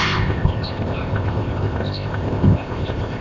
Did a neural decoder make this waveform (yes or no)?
yes